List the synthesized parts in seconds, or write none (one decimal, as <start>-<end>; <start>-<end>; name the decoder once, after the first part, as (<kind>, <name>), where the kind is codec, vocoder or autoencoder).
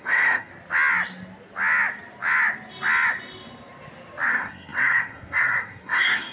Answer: 0.0-0.5 (codec, SNAC); 4.3-6.3